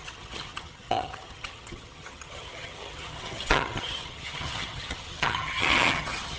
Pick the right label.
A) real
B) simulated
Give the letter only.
B